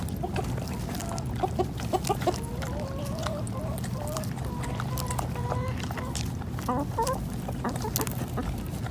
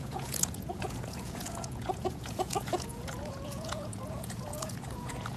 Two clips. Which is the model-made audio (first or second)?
second